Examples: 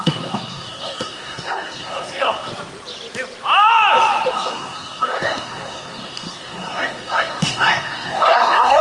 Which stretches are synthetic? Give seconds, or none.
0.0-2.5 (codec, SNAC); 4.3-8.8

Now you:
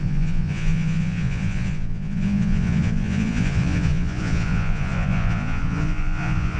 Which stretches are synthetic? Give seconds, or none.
0.0-6.6 (vocoder, Vocos)

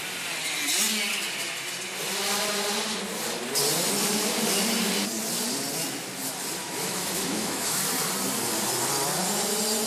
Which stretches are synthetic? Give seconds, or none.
6.6-7.8 (autoencoder, DAC-VAE)

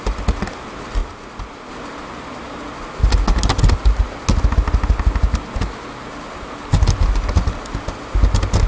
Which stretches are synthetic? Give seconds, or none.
none

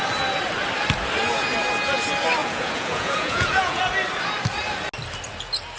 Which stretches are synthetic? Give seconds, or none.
2.4-3.8 (vocoder, Vocos)

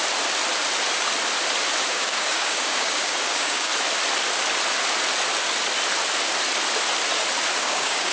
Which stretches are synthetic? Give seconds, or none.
1.9-3.7 (codec, DAC); 7.6-8.1